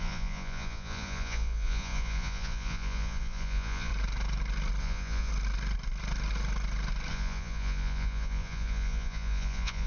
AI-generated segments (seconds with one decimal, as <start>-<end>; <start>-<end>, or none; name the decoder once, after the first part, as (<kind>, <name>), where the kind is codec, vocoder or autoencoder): 0.0-3.9 (vocoder, Vocos); 4.8-5.3; 7.1-9.9